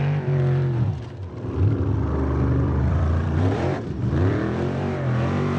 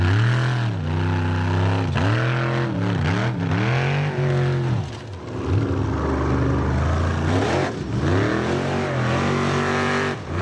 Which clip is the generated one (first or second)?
first